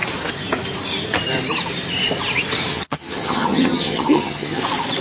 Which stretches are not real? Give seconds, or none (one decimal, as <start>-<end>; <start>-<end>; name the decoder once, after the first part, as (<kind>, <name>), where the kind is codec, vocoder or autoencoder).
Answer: 2.7-4.6 (vocoder, HiFi-GAN)